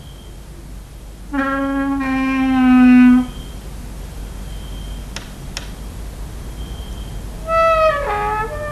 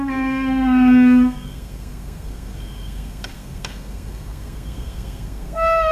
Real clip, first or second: first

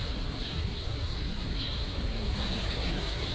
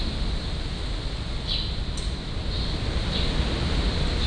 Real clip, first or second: second